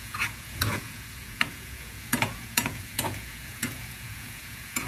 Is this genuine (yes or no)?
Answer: no